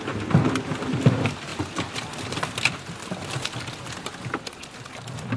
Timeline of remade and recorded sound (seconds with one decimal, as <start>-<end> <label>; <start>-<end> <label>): 0.0-5.4 recorded

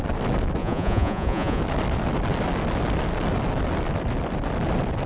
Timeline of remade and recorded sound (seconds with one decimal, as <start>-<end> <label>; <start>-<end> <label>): 0.0-0.6 recorded; 0.6-1.6 remade; 1.6-5.1 recorded

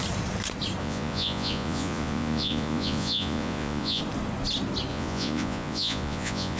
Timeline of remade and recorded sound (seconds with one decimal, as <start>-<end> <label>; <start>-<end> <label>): 0.0-0.8 recorded; 0.8-4.0 remade; 4.0-4.9 recorded; 4.9-6.6 remade

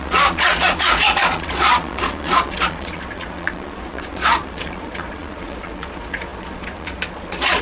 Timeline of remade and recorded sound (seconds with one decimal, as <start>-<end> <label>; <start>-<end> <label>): 0.0-7.6 remade

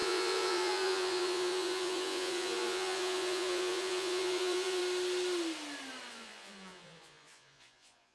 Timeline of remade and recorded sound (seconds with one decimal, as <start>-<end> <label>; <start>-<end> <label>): 0.0-4.8 remade; 4.8-6.1 recorded; 6.1-8.1 remade